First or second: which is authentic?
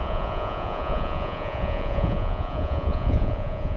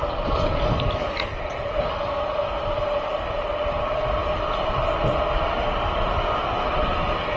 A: second